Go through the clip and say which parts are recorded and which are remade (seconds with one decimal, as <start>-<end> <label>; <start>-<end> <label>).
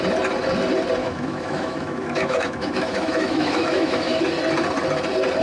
0.0-1.0 recorded; 1.0-4.2 remade; 4.2-5.4 recorded